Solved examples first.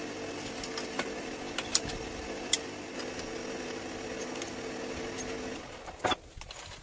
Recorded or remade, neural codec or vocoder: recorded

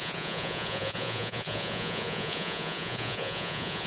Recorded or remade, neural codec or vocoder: remade, vocoder, Vocos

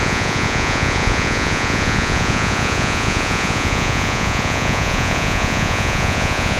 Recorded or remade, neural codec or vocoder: remade, vocoder, Vocos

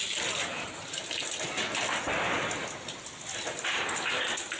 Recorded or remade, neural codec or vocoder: recorded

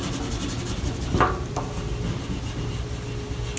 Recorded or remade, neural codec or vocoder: recorded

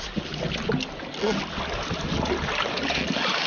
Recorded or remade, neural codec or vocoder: recorded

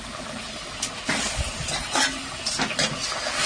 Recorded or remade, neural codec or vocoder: recorded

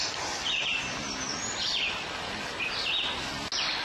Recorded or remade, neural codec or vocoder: recorded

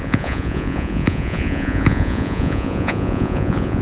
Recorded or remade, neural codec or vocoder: remade, vocoder, Vocos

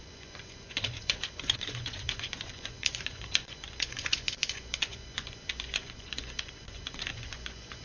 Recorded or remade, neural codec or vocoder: remade, vocoder, Vocos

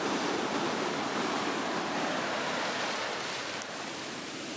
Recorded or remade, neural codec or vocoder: recorded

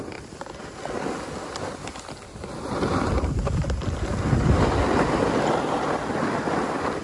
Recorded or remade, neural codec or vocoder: recorded